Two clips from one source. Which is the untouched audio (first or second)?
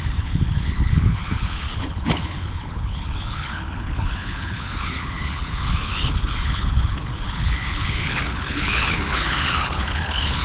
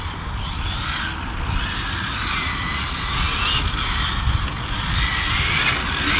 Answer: second